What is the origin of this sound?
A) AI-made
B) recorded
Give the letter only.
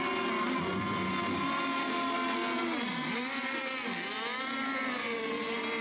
B